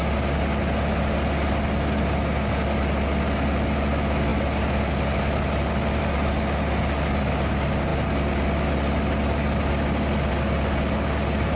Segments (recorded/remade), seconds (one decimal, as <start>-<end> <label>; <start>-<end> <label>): 0.0-11.6 recorded